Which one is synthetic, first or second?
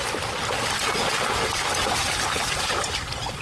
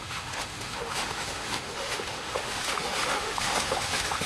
second